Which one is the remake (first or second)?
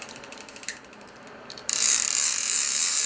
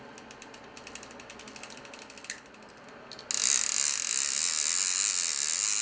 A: first